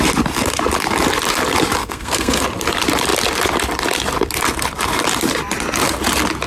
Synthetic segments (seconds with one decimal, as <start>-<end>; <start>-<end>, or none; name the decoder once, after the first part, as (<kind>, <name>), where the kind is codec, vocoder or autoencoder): 1.8-2.4 (codec, SNAC)